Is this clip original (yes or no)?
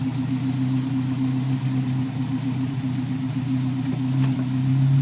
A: yes